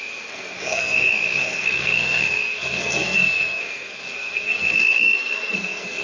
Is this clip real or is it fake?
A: fake